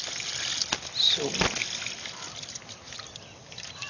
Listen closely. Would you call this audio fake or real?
real